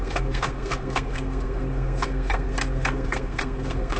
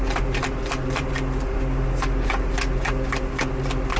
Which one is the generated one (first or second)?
first